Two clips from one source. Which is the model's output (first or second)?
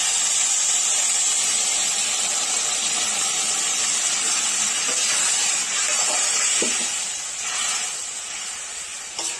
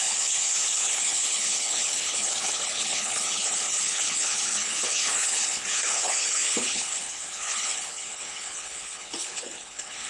second